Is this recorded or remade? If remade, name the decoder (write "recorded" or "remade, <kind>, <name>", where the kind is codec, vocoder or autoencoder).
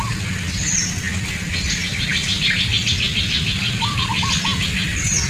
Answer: recorded